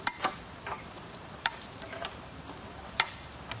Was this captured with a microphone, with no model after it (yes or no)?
no